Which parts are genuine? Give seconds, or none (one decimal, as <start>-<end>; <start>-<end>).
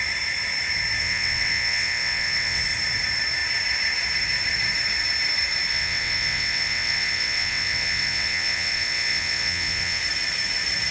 0.0-1.0; 2.6-5.7; 10.0-10.9